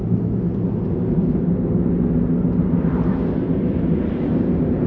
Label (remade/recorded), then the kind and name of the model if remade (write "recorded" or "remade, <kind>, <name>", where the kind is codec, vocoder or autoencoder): recorded